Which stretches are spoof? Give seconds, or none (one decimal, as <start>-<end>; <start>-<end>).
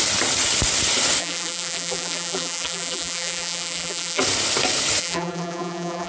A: 1.2-4.2; 5.0-6.1